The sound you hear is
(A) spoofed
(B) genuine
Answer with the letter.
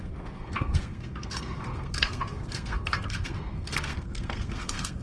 A